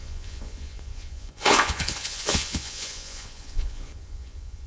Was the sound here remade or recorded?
remade